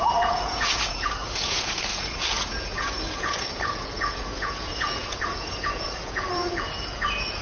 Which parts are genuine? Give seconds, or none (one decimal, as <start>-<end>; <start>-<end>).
none

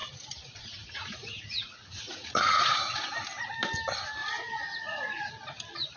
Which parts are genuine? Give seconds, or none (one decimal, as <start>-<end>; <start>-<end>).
3.1-4.2; 5.3-6.0

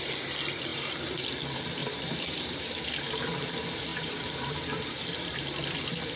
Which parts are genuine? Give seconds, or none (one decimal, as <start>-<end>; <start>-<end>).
0.0-0.7; 1.2-1.8; 2.8-3.9; 4.9-6.2